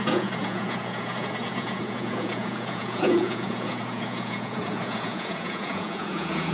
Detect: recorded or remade remade